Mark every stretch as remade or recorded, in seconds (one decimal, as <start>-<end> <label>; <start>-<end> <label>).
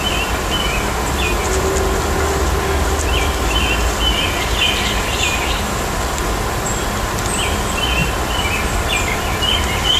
0.0-10.0 recorded